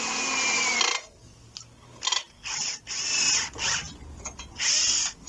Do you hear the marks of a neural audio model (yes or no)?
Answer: no